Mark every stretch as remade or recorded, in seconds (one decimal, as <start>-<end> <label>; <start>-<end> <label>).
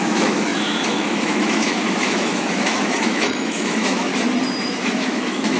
0.0-4.1 remade; 4.1-4.7 recorded; 4.7-5.6 remade